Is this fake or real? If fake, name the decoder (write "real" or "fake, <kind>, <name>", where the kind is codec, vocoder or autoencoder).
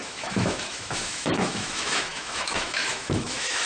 fake, autoencoder, DAC-VAE